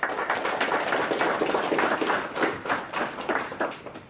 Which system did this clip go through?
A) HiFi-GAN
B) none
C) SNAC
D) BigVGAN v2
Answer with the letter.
B